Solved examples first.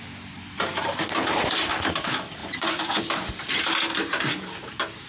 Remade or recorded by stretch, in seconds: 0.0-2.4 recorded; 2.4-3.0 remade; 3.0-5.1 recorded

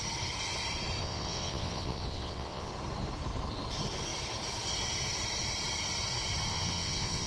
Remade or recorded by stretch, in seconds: 0.0-1.0 recorded; 1.0-2.7 remade; 2.7-6.5 recorded; 6.5-7.3 remade

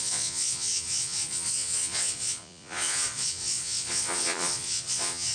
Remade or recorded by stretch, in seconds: 0.0-5.3 remade

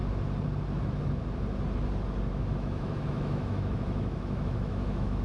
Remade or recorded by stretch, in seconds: 0.0-2.2 recorded; 2.2-5.2 remade

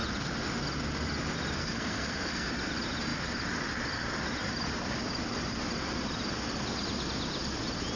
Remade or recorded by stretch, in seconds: 0.0-1.6 recorded; 1.6-2.5 remade; 2.5-8.0 recorded

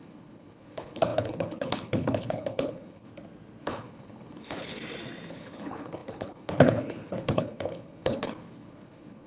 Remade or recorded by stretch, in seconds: 0.0-3.1 remade; 3.1-3.6 recorded; 3.6-4.8 remade; 4.8-5.3 recorded; 5.3-9.3 remade